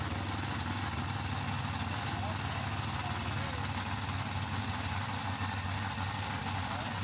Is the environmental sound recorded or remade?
recorded